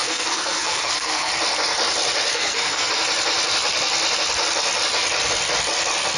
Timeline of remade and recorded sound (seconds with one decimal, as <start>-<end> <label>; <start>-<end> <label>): 0.0-1.3 remade; 1.3-2.3 recorded; 2.3-2.9 remade; 2.9-6.2 recorded